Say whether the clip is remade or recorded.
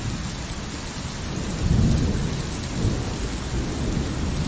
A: recorded